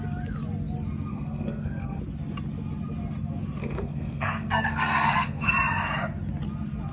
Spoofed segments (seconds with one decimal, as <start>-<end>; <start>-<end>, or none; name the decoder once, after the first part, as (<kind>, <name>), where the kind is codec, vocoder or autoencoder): 1.1-2.0 (codec, SNAC); 3.6-5.5